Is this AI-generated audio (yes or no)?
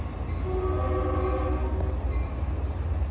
no